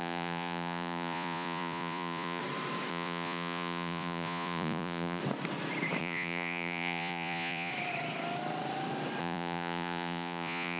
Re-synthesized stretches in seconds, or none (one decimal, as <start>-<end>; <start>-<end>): 0.0-2.4; 2.9-5.2; 6.0-7.7; 9.2-10.8